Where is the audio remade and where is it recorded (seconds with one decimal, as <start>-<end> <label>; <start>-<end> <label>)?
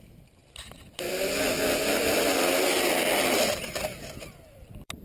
0.0-5.0 remade